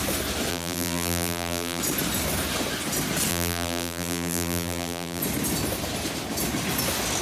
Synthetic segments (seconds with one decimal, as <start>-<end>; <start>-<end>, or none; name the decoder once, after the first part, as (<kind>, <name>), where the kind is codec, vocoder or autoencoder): 0.5-1.8 (vocoder, BigVGAN v2); 3.3-5.2